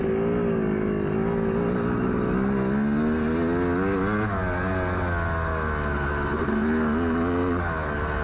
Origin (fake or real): real